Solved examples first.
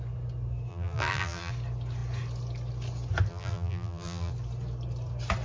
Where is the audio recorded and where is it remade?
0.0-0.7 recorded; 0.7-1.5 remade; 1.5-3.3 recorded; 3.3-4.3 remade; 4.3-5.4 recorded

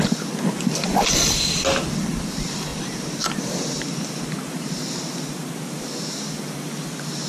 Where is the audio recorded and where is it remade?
0.0-2.7 recorded; 2.7-4.1 remade; 4.1-7.3 recorded

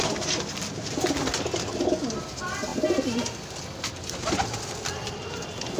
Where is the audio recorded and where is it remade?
0.0-1.9 remade; 1.9-5.8 recorded

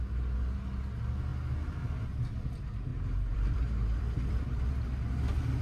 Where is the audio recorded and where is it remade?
0.0-2.9 recorded; 2.9-4.7 remade; 4.7-5.6 recorded

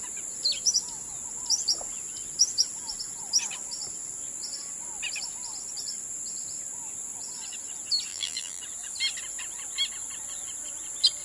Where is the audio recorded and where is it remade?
0.0-8.1 recorded; 8.1-8.6 remade; 8.6-11.2 recorded

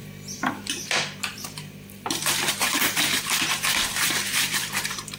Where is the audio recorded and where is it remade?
0.0-0.7 recorded; 0.7-5.2 remade

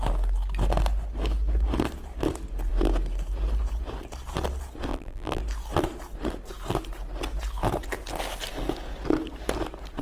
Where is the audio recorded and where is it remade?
0.0-4.9 recorded; 4.9-5.4 remade; 5.4-10.0 recorded